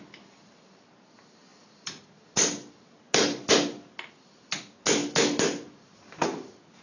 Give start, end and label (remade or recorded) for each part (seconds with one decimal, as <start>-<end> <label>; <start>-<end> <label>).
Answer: 0.0-6.8 recorded